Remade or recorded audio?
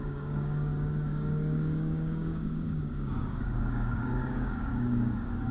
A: remade